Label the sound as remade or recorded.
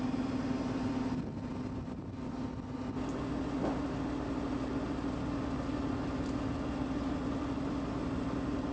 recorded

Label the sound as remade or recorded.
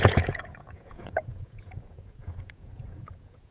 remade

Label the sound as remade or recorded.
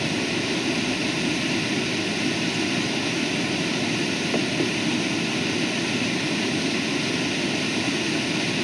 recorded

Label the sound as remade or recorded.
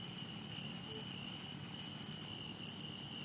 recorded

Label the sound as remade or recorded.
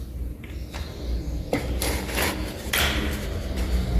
recorded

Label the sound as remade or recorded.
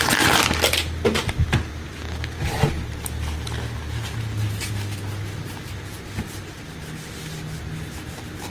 recorded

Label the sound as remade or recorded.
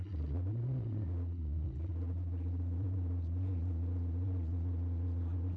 remade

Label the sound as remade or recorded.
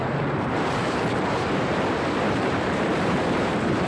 remade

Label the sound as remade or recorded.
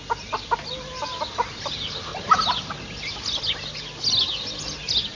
recorded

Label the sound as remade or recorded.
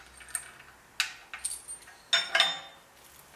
recorded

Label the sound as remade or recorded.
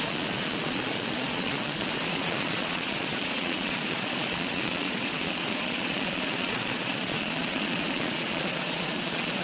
remade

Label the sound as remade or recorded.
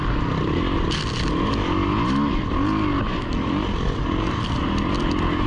recorded